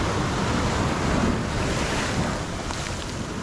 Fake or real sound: fake